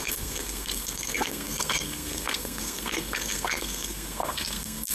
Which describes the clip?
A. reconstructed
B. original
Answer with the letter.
A